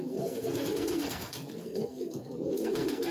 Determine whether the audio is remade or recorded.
remade